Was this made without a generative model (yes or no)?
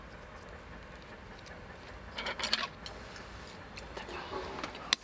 yes